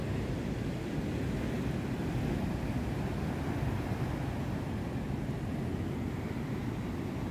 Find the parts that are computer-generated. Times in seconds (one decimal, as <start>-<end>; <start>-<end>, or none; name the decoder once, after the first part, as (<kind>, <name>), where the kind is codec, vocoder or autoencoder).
none